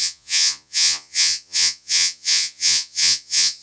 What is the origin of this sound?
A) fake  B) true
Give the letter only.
A